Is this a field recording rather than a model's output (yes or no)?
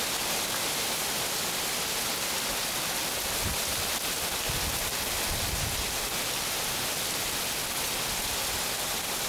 yes